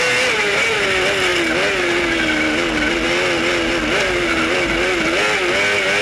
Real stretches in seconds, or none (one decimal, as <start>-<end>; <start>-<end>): 0.0-6.0